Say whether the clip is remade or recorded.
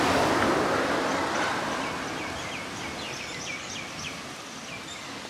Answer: recorded